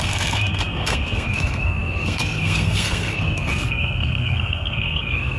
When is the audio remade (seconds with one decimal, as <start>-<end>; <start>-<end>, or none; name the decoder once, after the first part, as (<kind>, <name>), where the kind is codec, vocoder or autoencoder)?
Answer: 0.0-5.4 (codec, SNAC)

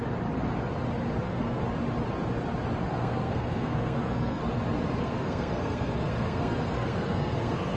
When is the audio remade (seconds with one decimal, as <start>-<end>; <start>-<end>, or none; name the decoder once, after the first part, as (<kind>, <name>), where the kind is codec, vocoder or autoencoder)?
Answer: 1.2-1.6 (codec, SNAC); 2.9-4.4; 5.0-7.8

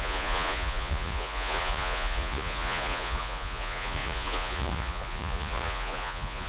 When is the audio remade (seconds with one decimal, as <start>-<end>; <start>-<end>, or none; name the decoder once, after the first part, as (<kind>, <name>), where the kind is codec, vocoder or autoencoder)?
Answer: 0.0-6.5 (vocoder, Vocos)

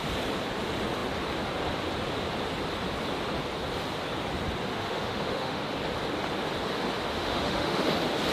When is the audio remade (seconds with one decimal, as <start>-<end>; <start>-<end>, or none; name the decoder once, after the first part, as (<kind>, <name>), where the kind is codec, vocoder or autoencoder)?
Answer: 4.7-5.6 (autoencoder, DAC-VAE); 7.1-7.9